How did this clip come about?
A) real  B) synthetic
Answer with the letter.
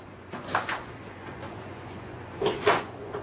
B